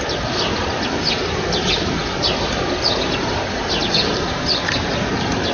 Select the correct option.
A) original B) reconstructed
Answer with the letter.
A